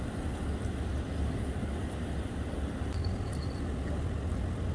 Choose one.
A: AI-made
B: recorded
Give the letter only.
B